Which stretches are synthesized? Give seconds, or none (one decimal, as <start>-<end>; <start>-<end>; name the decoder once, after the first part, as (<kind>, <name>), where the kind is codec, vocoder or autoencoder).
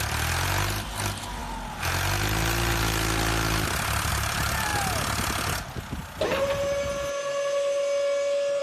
0.0-1.4 (vocoder, BigVGAN v2); 4.1-4.7